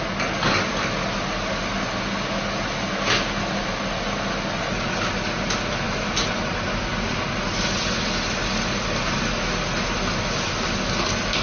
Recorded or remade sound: recorded